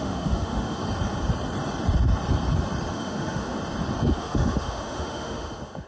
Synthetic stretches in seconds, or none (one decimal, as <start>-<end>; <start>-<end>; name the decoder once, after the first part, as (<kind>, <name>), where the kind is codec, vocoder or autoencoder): 0.0-0.8 (autoencoder, DAC-VAE); 2.9-3.6; 4.1-5.9